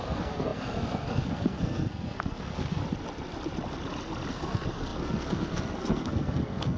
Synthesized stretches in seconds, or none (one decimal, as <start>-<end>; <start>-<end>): 0.0-2.8; 4.3-6.8